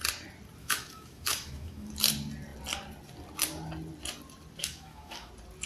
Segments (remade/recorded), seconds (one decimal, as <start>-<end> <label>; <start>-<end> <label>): 0.0-0.6 recorded; 0.6-1.9 remade; 1.9-4.6 recorded; 4.6-5.3 remade; 5.3-5.7 recorded